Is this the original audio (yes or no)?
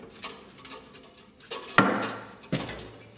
yes